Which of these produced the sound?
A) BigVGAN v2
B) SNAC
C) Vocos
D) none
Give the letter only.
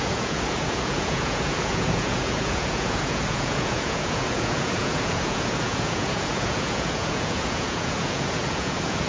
C